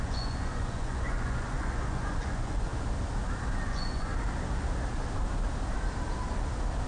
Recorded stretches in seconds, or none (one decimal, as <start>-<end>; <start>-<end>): 2.7-3.6; 4.1-6.9